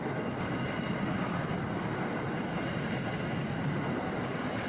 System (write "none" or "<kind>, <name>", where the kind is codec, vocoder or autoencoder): none